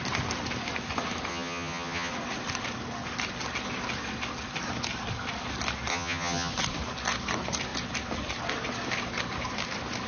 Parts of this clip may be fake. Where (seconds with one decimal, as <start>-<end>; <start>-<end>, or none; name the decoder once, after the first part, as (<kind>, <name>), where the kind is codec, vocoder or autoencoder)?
1.3-2.1 (vocoder, HiFi-GAN); 5.9-6.5